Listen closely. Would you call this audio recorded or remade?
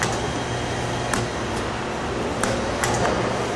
recorded